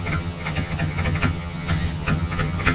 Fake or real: fake